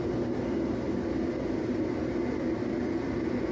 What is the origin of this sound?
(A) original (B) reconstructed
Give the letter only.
A